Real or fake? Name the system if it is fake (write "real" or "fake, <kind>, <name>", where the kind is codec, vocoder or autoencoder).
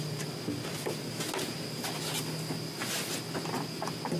real